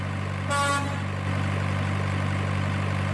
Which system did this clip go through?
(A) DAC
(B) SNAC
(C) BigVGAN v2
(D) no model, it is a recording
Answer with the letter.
D